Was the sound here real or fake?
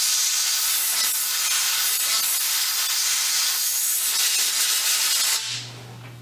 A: real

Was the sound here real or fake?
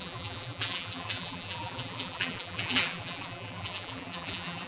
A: fake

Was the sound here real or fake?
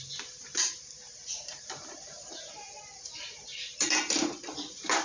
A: fake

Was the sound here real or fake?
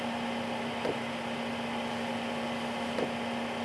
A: real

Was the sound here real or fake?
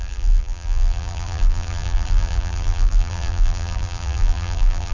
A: fake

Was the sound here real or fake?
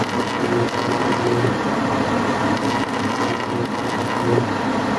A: real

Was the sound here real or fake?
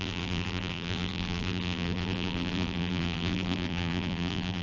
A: fake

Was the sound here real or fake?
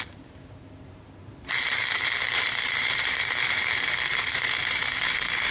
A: fake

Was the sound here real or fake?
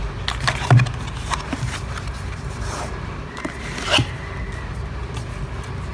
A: real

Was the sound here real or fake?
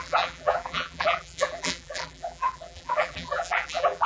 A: fake